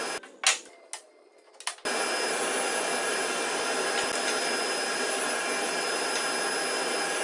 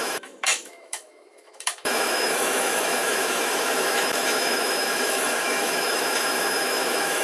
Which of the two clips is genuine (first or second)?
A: first